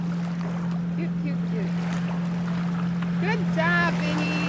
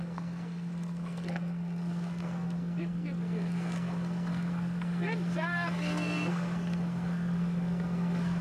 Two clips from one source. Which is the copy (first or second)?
second